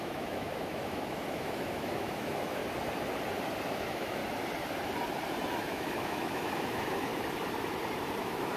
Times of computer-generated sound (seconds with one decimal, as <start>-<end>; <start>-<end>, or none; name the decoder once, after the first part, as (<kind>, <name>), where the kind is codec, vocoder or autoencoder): 0.0-2.6 (autoencoder, DAC-VAE); 3.7-4.2; 5.5-7.1; 8.2-8.6